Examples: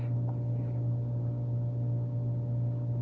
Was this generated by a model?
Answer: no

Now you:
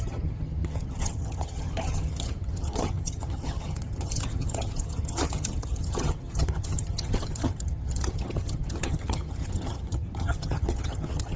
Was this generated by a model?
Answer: yes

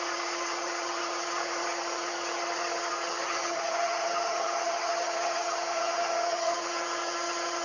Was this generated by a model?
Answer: yes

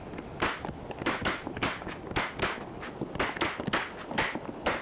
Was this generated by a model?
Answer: no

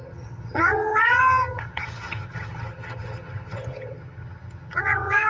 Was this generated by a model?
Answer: yes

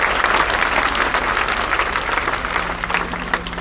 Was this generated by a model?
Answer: no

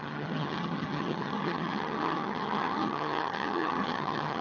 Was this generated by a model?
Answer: yes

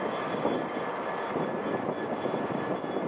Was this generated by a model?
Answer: no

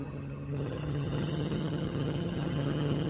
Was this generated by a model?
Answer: yes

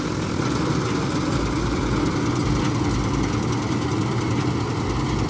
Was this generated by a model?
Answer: no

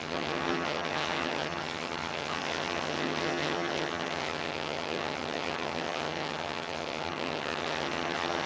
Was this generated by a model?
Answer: yes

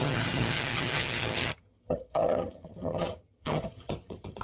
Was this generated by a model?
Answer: yes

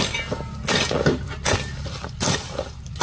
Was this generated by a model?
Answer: no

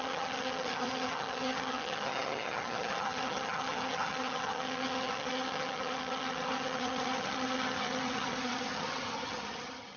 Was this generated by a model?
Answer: yes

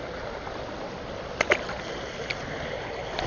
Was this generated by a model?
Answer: no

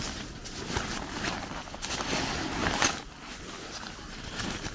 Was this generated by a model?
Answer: no